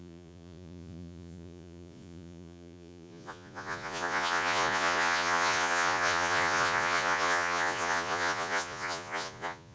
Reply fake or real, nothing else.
fake